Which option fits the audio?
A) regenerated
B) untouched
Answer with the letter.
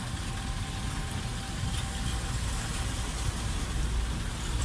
B